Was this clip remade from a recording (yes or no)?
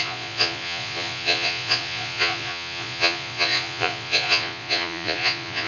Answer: yes